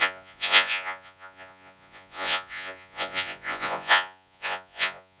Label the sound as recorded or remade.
remade